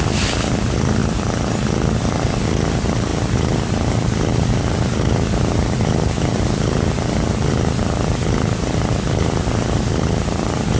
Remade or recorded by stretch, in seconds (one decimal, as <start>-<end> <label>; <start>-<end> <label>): 0.0-10.8 recorded